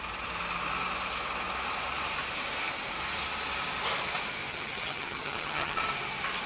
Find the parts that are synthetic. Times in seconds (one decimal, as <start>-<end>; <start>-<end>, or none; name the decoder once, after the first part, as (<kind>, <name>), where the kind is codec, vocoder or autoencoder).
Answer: 4.5-5.8 (vocoder, HiFi-GAN)